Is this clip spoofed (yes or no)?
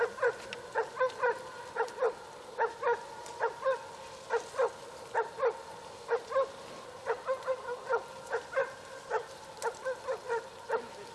no